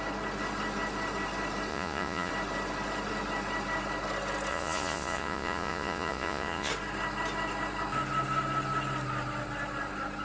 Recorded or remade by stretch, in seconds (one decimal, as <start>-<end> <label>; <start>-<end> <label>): 0.0-1.7 recorded; 1.7-2.3 remade; 2.3-4.5 recorded; 4.5-6.7 remade; 6.7-10.2 recorded